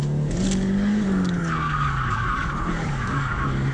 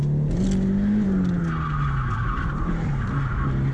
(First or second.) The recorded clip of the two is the second